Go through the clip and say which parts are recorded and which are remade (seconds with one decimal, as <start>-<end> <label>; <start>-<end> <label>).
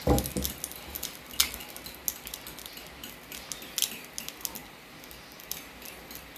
0.0-4.6 recorded; 4.6-5.5 remade; 5.5-6.4 recorded